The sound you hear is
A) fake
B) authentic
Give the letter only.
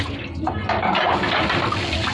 B